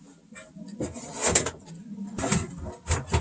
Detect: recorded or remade recorded